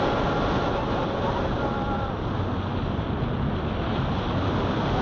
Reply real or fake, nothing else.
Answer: real